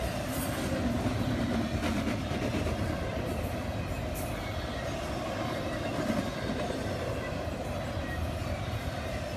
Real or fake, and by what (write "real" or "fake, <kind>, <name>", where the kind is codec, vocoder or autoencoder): real